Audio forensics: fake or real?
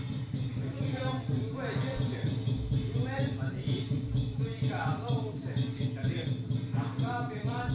fake